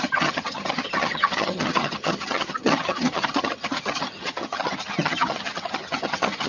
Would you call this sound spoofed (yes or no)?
yes